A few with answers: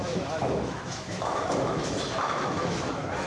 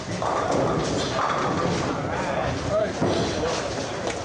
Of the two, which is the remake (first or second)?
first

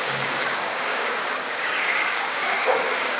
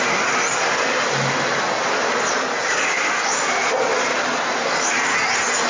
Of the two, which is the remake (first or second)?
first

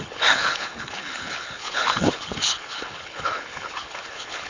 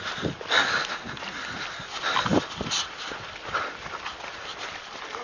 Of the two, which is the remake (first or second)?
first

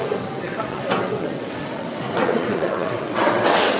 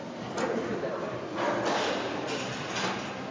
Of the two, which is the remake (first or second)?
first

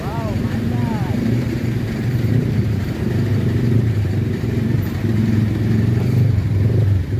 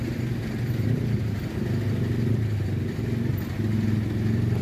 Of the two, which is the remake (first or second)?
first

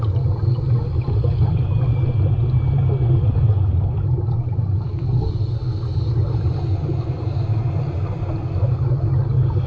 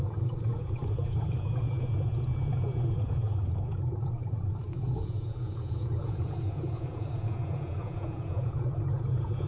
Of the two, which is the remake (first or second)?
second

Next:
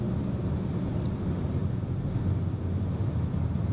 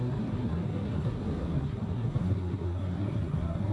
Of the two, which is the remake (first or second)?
second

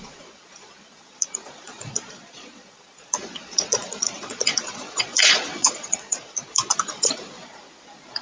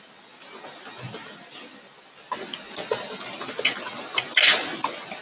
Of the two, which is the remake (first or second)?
first